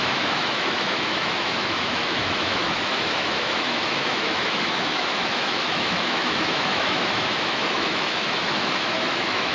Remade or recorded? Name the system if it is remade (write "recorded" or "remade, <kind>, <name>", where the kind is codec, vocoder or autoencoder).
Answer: remade, autoencoder, DAC-VAE